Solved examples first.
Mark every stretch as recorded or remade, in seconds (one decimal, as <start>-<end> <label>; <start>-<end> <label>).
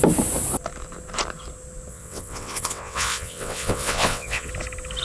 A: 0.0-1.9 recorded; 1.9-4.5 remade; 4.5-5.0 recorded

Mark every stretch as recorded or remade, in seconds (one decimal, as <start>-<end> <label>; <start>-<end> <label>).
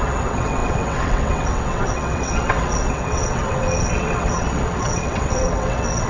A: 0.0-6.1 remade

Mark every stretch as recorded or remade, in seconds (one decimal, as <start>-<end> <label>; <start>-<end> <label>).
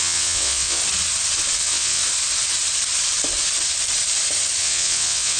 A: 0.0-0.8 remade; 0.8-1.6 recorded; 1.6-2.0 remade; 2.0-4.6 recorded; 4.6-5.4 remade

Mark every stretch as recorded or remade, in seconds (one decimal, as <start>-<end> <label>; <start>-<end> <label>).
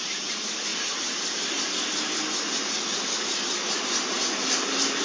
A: 0.0-5.0 recorded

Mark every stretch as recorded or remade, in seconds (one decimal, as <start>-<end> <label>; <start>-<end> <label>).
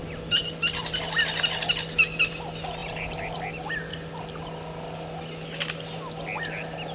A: 0.0-6.9 recorded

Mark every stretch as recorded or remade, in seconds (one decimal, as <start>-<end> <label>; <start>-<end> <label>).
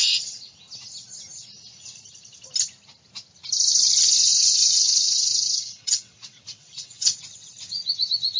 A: 0.0-0.7 remade; 0.7-4.3 recorded; 4.3-7.2 remade; 7.2-8.4 recorded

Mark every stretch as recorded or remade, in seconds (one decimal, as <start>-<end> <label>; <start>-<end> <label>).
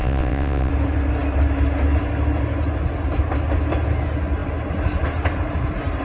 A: 0.0-0.7 remade; 0.7-6.0 recorded